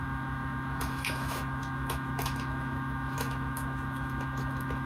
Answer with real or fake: fake